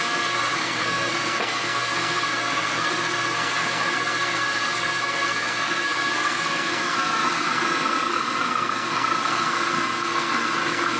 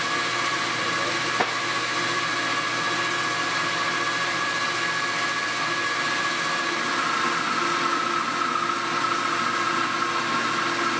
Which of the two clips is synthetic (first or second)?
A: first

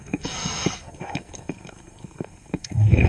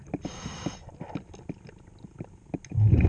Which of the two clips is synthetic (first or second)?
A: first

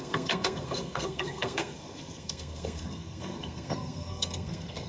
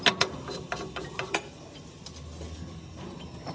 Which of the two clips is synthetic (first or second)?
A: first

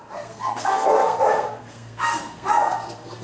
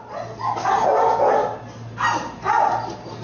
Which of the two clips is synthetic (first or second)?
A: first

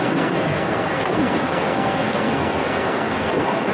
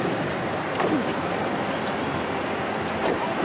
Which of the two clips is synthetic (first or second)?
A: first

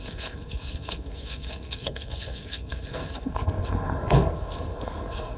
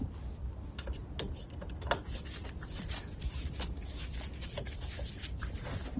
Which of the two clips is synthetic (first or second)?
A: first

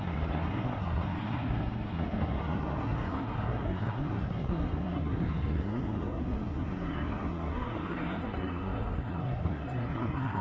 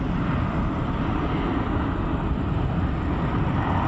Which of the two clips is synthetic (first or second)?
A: first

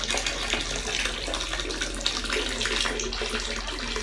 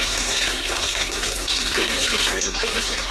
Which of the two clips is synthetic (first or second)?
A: second